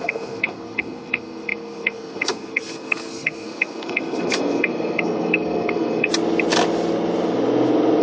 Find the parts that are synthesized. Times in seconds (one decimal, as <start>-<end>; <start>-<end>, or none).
0.0-6.1